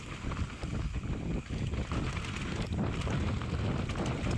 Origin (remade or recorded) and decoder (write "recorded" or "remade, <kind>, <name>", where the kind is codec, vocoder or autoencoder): recorded